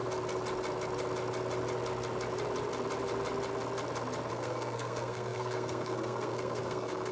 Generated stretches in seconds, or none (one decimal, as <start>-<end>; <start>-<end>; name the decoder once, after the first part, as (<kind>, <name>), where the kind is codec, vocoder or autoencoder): 4.3-7.1 (codec, SNAC)